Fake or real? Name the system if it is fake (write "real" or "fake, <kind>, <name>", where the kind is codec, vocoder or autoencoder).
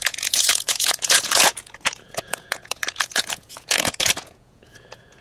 fake, vocoder, Vocos